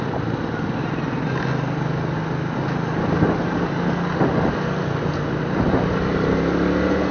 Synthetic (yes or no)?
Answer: no